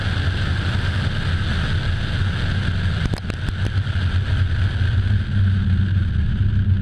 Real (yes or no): yes